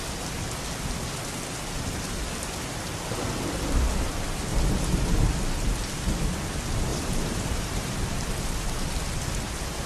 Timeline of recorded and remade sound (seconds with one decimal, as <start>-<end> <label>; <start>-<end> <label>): 0.0-4.5 recorded; 4.5-5.4 remade; 5.4-6.9 recorded; 6.9-7.9 remade; 7.9-9.9 recorded